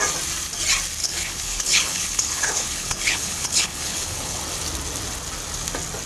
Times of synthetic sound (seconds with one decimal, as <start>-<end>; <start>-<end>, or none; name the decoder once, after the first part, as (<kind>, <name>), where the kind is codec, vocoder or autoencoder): 1.0-4.4 (codec, HILCodec)